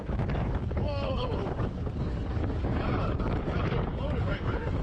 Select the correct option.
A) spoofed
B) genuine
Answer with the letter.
A